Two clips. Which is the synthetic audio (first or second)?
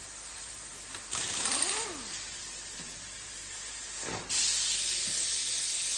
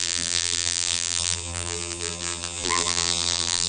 second